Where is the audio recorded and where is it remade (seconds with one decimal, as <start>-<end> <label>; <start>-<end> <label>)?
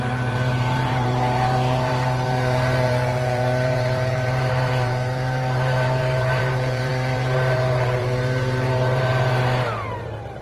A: 0.0-10.4 remade